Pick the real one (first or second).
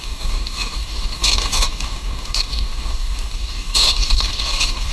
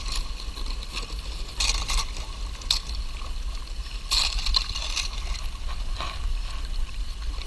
second